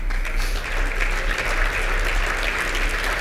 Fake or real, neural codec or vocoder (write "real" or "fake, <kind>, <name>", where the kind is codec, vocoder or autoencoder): real